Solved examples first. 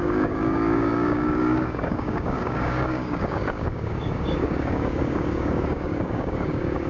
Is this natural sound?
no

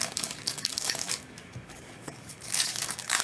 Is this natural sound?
no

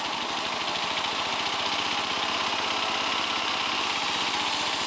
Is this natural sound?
yes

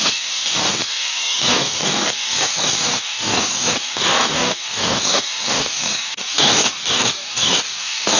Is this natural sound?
no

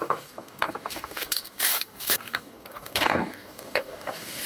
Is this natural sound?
no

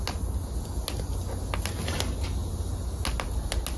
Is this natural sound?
yes